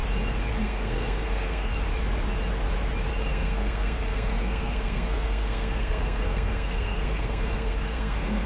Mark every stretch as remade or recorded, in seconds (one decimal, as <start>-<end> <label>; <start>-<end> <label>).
0.0-0.6 recorded; 0.6-1.7 remade; 1.7-3.3 recorded; 3.3-8.5 remade